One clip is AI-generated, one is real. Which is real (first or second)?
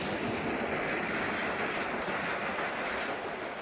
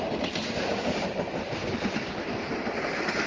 first